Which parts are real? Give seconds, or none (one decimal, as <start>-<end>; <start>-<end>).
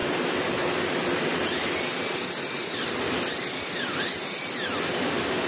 0.0-5.5